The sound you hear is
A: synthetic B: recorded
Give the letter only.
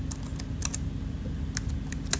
B